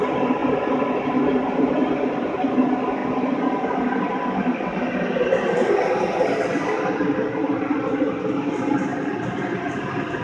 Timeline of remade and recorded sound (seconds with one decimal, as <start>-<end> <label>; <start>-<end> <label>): 0.0-0.4 remade; 0.4-1.7 recorded; 1.7-10.2 remade